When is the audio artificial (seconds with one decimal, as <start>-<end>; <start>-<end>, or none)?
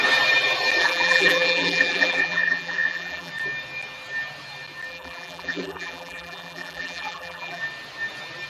0.8-3.3; 4.9-7.6